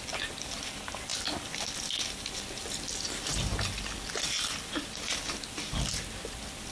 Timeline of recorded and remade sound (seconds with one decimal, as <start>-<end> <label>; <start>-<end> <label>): 0.0-6.7 recorded